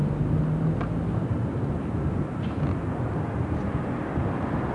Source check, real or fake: real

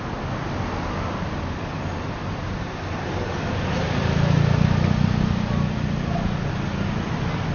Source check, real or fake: real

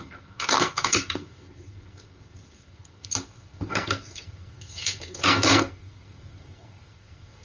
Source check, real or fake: fake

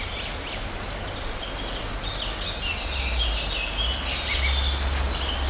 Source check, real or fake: real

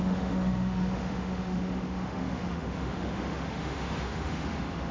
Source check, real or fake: fake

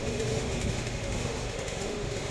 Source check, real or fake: fake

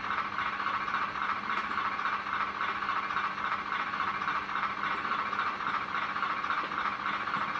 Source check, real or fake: real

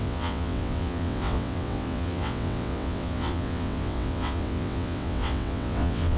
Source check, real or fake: fake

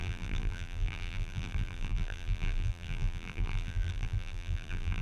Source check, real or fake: fake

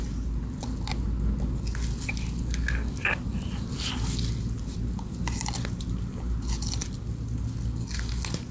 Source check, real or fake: real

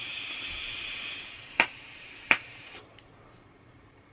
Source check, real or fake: fake